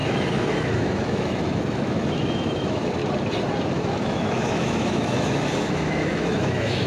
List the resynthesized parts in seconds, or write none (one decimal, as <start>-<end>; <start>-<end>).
0.0-3.0; 3.7-6.9